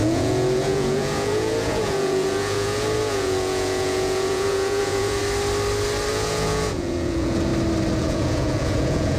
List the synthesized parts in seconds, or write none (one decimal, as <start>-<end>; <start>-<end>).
0.0-5.2; 6.1-7.5; 8.0-9.2